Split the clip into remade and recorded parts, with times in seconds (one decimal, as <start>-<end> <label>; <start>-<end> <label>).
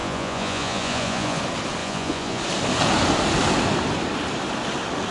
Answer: 0.0-1.4 remade; 1.4-1.8 recorded; 1.8-2.4 remade; 2.4-5.1 recorded